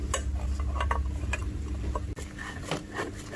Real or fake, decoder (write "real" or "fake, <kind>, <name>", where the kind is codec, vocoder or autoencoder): real